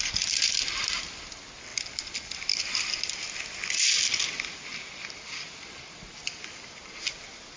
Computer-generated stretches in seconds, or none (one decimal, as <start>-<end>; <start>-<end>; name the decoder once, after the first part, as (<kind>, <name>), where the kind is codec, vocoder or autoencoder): none